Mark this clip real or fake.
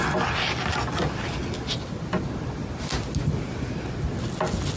real